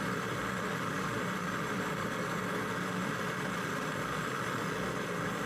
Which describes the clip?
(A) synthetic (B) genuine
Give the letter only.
A